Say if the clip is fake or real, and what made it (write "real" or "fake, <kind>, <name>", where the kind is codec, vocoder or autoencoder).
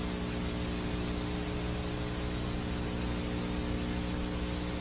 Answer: real